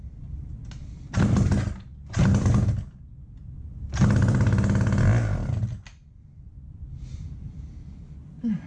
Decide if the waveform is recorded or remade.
recorded